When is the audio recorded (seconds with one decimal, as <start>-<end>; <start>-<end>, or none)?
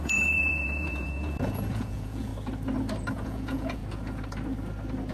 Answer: 2.3-3.1; 3.8-5.1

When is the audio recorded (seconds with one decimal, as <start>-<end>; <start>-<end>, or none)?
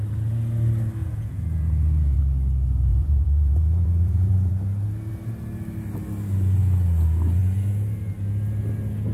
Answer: 0.0-1.0; 2.2-2.9; 4.5-9.1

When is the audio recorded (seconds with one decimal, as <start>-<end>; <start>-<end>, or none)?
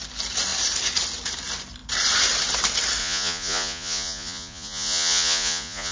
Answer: 0.0-3.0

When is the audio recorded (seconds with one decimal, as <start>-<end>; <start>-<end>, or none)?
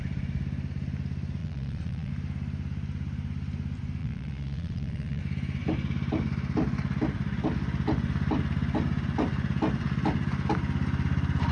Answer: 0.0-1.4; 2.1-4.0; 5.2-11.5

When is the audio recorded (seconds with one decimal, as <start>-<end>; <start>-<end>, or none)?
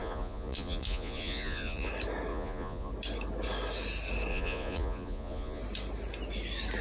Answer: 1.9-2.3; 2.9-4.3; 5.6-6.8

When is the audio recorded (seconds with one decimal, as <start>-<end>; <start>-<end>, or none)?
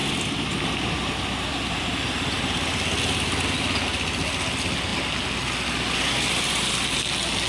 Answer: 0.0-7.5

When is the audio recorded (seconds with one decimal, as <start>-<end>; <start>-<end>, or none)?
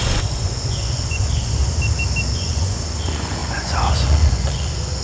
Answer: 1.6-2.3